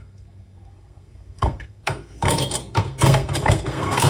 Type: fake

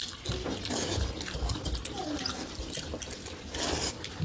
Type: real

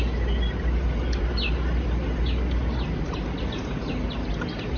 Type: real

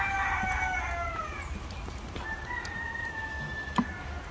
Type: real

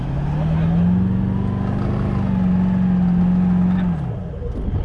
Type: real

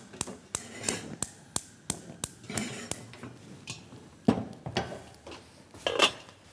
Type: real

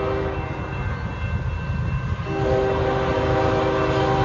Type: real